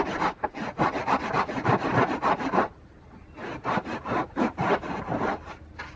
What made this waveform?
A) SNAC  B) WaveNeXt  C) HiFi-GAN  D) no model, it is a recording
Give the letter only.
D